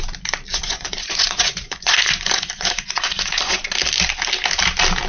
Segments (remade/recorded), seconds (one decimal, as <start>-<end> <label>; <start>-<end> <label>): 0.0-0.5 recorded; 0.5-3.6 remade; 3.6-5.1 recorded